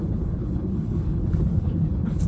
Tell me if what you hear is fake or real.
fake